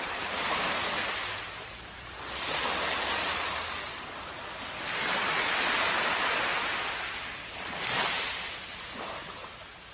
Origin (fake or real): real